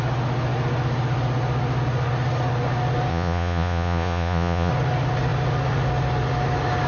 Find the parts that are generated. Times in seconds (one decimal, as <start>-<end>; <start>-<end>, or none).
3.1-4.7